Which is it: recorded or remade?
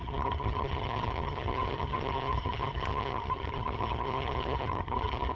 remade